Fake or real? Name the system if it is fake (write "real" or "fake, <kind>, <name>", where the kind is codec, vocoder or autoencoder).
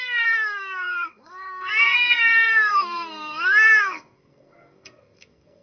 fake, codec, SNAC